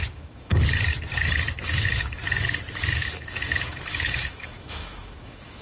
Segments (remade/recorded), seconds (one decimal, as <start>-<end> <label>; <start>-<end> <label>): 0.0-0.5 remade; 0.5-1.6 recorded; 1.6-2.2 remade; 2.2-2.9 recorded; 2.9-5.6 remade